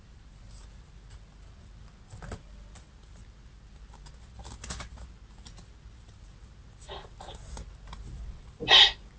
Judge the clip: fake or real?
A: real